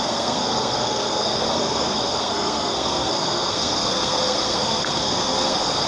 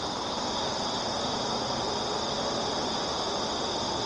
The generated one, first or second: first